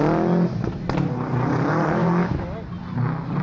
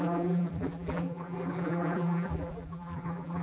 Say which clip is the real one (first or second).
first